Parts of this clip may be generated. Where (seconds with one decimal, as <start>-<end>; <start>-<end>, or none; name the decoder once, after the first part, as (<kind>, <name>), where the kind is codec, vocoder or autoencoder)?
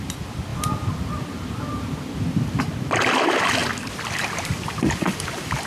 none